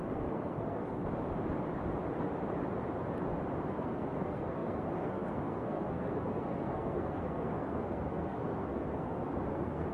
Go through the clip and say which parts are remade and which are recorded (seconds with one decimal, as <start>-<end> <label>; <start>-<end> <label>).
0.0-1.0 remade; 1.0-3.7 recorded; 3.7-9.9 remade